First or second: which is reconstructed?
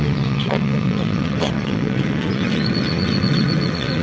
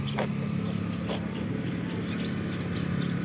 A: first